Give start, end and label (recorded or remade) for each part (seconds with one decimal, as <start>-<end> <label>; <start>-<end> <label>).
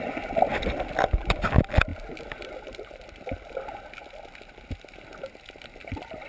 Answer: 0.0-6.3 recorded